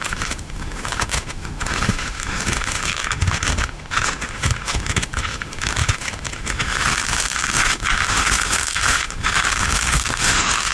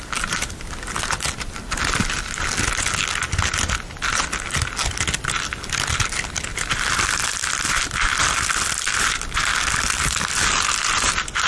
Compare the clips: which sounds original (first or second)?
second